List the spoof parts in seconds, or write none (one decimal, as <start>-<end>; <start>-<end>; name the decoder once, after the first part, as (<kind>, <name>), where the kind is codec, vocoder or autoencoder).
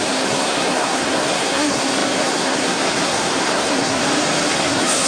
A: 0.0-4.0 (codec, SNAC); 4.5-5.1